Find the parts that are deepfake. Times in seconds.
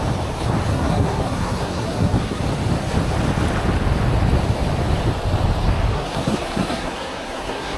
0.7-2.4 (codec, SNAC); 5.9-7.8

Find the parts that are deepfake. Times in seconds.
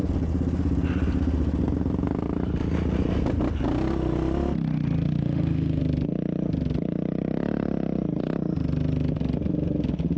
5.2-5.8 (autoencoder, DAC-VAE)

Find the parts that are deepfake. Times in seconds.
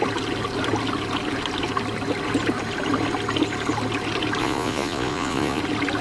4.4-5.6 (vocoder, Vocos)